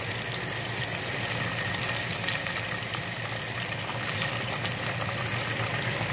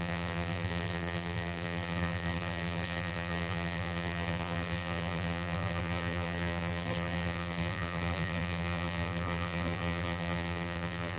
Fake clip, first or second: second